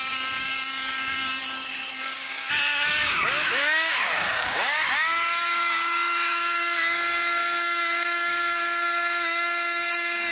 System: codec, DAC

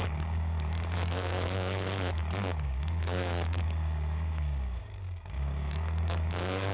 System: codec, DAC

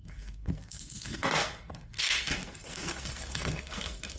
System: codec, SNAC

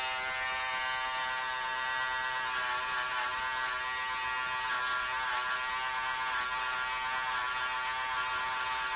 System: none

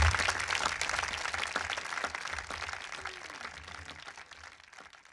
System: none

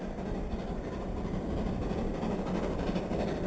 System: none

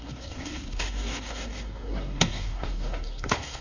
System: codec, SNAC